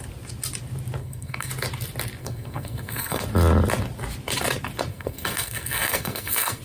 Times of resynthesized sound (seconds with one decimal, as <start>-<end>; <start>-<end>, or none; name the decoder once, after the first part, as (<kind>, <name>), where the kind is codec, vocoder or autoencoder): 1.0-1.5 (codec, SNAC); 2.2-3.2; 4.9-6.6